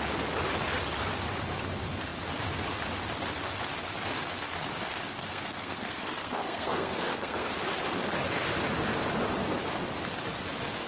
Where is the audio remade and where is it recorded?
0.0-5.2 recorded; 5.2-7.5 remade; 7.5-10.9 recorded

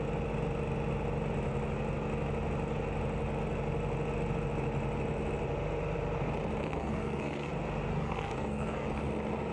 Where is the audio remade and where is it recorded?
0.0-6.6 recorded; 6.6-7.5 remade; 7.5-7.9 recorded; 7.9-9.0 remade; 9.0-9.5 recorded

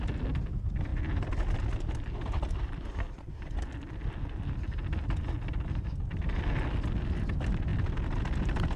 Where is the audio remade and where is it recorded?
0.0-8.8 recorded

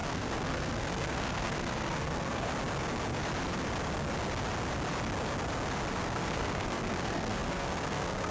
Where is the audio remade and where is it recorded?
0.0-2.5 remade; 2.5-5.9 recorded; 5.9-8.3 remade

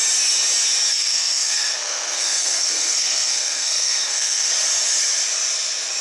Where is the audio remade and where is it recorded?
0.0-0.9 recorded; 0.9-4.5 remade; 4.5-6.0 recorded

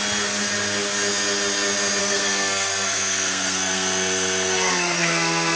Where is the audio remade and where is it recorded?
0.0-2.0 recorded; 2.0-5.6 remade

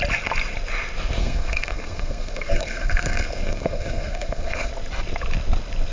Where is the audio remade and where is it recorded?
0.0-1.2 recorded; 1.2-4.7 remade; 4.7-5.9 recorded

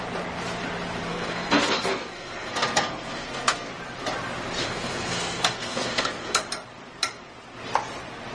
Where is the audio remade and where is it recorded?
0.0-1.1 recorded; 1.1-3.7 remade; 3.7-4.6 recorded; 4.6-6.4 remade; 6.4-8.3 recorded